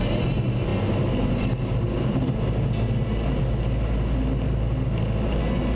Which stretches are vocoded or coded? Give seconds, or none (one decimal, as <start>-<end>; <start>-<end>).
none